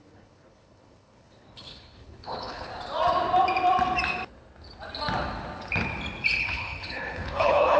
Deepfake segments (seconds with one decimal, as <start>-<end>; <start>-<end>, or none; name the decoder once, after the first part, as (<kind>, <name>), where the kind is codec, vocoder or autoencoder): 0.0-2.7 (codec, HILCodec); 6.4-7.8